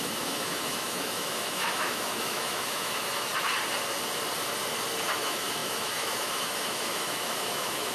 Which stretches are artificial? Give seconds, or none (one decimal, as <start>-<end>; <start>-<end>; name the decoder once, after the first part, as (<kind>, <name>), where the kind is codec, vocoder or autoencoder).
0.0-3.3 (autoencoder, DAC-VAE); 5.1-7.9